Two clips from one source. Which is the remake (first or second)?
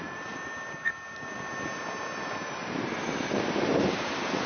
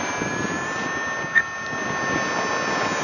first